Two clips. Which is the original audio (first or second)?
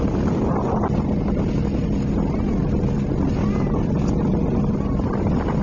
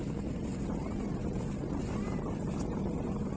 first